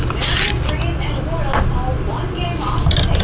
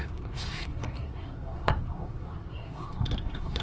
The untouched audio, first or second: first